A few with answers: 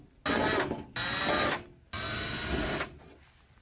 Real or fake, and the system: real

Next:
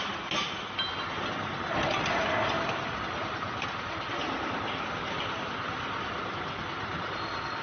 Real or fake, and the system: real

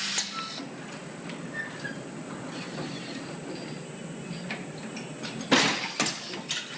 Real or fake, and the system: real